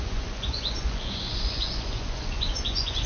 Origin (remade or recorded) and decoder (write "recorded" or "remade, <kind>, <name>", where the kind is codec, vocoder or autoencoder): remade, vocoder, Vocos